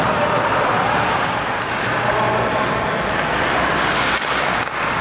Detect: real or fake real